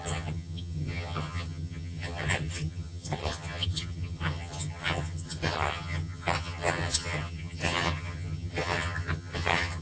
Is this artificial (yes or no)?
yes